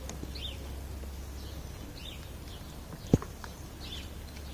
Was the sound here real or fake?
real